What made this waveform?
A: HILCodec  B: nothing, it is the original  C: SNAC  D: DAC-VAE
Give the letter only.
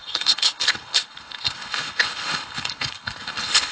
A